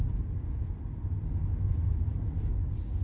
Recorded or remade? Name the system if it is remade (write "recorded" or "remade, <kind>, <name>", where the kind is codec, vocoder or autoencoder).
recorded